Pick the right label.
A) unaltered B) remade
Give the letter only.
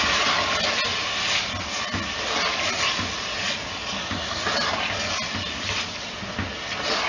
A